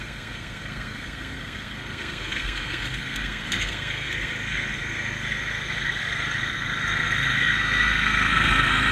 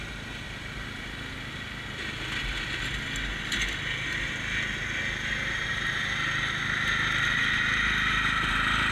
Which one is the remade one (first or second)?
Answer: first